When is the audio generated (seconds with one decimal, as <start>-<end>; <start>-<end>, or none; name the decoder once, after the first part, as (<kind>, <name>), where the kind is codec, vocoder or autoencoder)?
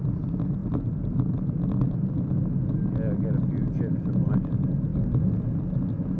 none